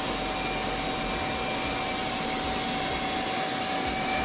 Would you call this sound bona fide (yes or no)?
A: yes